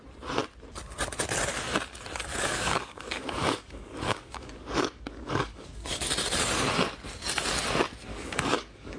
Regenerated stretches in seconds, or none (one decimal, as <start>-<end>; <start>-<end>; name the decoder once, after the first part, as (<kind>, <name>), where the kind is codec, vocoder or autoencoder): 2.3-6.1 (codec, DAC); 8.1-9.0